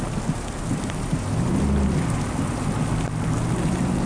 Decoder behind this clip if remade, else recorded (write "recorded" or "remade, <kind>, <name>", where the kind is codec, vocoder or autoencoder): recorded